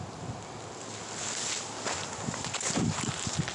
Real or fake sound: real